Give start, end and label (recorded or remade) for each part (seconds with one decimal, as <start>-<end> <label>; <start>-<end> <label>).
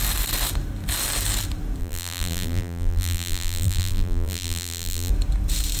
0.0-1.8 recorded; 1.8-5.1 remade; 5.1-5.8 recorded